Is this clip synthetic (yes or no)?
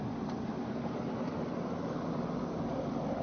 no